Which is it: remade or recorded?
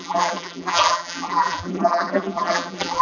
remade